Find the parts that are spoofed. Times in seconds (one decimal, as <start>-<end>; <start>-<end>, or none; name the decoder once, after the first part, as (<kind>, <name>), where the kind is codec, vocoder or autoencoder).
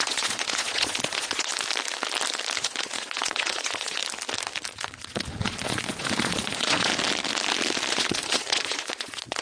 0.0-1.5 (vocoder, Vocos); 2.6-4.0; 4.7-6.9; 7.9-9.4